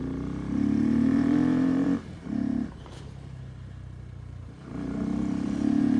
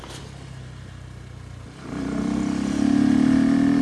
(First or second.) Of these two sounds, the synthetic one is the first